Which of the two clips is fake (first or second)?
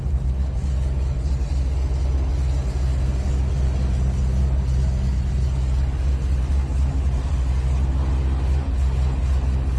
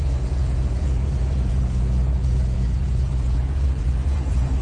second